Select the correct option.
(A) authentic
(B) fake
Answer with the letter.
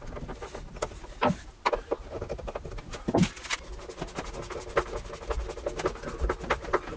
A